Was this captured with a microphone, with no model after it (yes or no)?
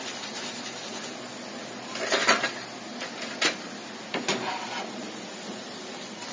yes